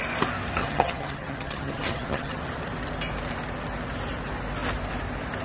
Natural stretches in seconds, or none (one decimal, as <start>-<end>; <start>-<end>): 0.0-0.6; 2.4-5.4